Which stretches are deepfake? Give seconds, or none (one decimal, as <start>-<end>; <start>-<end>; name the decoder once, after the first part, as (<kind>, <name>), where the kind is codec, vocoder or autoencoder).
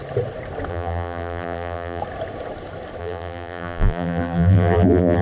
0.7-2.0 (vocoder, BigVGAN v2); 3.0-5.2